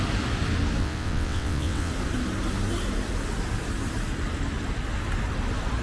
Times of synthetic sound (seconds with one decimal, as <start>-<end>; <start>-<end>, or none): 0.8-1.9